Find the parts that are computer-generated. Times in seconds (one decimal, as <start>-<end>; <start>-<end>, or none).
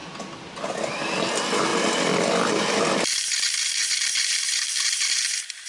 0.0-0.9; 1.7-3.2; 3.8-5.7